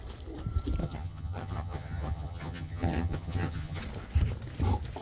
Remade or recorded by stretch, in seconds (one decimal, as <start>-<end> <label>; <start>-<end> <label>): 0.0-0.8 recorded; 0.8-3.8 remade; 3.8-5.0 recorded